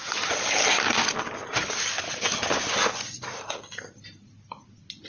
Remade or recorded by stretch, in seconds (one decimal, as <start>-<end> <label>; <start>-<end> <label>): 0.0-5.1 recorded